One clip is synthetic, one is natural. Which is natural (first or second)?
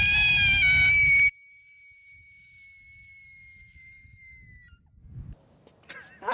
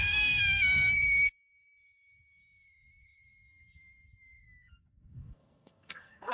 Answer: first